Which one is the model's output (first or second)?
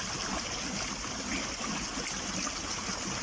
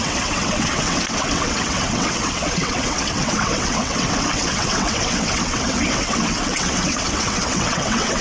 second